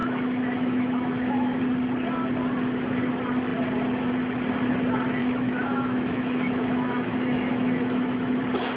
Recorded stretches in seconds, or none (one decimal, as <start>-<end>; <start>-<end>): 1.6-5.2; 8.4-8.8